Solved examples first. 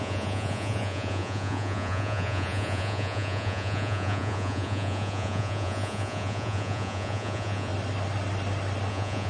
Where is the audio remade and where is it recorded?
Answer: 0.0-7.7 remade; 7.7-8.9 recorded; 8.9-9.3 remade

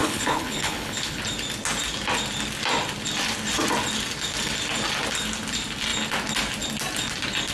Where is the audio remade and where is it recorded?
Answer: 0.0-1.2 remade; 1.2-7.5 recorded

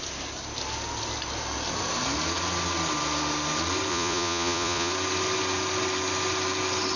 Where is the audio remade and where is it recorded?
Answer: 0.0-3.9 recorded; 3.9-4.9 remade; 4.9-7.0 recorded